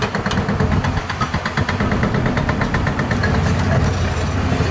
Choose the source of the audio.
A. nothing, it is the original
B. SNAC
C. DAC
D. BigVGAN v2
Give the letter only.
A